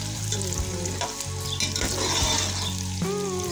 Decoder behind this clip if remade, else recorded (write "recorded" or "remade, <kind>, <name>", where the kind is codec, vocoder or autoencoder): recorded